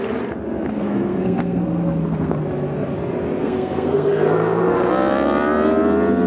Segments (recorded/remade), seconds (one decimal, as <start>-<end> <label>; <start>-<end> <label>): 0.0-0.7 recorded; 0.7-2.4 remade; 2.4-3.4 recorded; 3.4-4.9 remade; 4.9-6.3 recorded